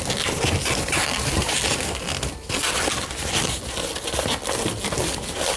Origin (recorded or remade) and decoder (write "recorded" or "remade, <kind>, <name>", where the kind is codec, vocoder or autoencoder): recorded